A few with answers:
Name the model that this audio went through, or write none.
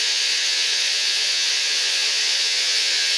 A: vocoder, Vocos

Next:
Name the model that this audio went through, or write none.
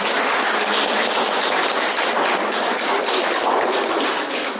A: none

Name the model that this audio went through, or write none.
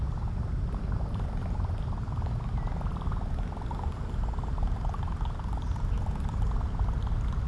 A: none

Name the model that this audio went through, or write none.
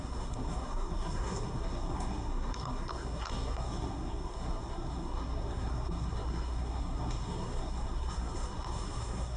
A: codec, SNAC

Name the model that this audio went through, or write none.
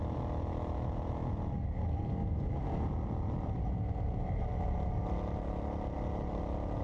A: none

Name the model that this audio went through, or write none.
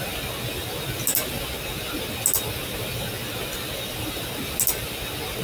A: none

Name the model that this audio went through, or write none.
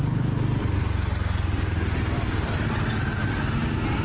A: none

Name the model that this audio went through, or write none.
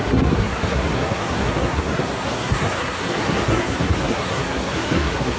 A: codec, SNAC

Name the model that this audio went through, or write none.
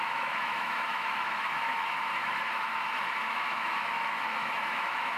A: autoencoder, DAC-VAE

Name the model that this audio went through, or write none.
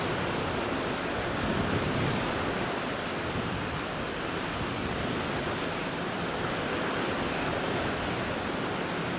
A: none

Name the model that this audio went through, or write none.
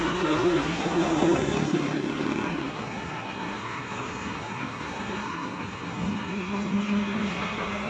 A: codec, SNAC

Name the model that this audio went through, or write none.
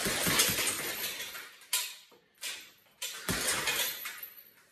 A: none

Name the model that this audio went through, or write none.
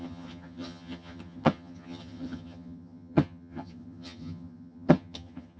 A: vocoder, HiFi-GAN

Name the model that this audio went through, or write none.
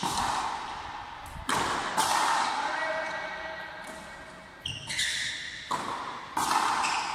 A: none